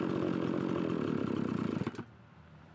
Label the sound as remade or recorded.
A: recorded